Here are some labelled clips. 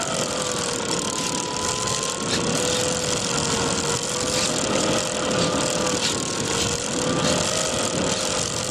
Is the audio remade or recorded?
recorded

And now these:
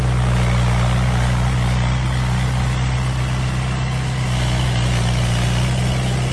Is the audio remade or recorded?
recorded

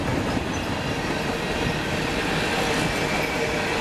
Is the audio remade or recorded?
recorded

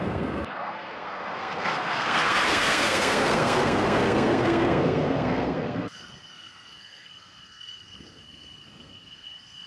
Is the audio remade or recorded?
remade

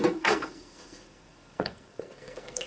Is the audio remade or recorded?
remade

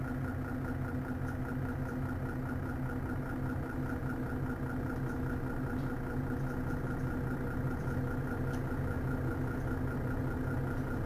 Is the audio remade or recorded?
recorded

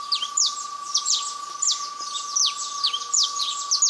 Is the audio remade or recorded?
recorded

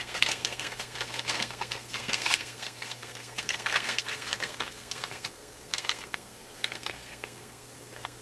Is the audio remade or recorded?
remade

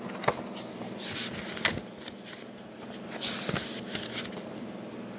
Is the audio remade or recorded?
recorded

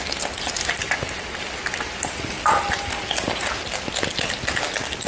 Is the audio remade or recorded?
recorded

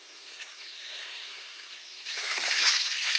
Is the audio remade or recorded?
remade